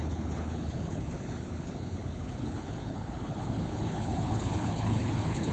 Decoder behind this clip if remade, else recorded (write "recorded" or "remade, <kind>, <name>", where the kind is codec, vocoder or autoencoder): remade, codec, HILCodec